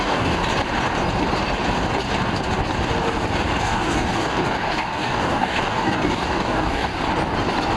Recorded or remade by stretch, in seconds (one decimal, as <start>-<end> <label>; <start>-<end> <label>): 0.0-0.4 remade; 0.4-3.6 recorded; 3.6-6.9 remade; 6.9-7.8 recorded